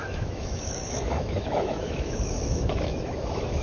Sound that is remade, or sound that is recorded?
remade